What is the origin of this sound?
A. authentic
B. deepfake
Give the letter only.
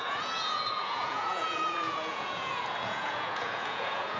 B